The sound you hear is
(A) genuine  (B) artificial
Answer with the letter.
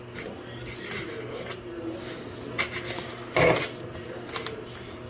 A